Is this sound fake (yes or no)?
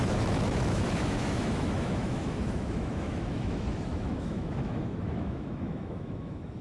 yes